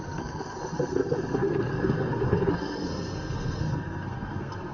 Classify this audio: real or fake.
fake